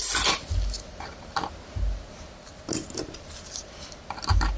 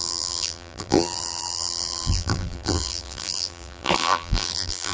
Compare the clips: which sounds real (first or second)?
first